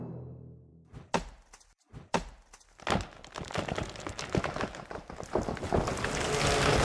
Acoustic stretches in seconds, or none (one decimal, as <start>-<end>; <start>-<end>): 0.0-6.8